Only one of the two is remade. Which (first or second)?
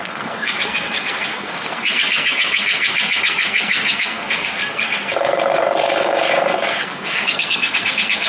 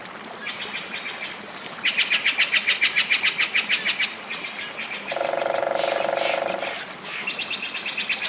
first